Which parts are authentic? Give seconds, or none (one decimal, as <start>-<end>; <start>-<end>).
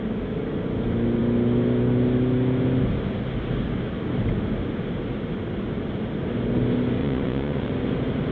0.0-7.0; 7.7-8.3